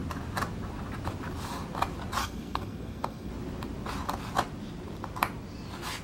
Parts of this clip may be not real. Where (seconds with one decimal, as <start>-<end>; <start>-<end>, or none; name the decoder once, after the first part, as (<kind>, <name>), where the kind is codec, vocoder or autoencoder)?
2.2-3.3 (codec, SNAC)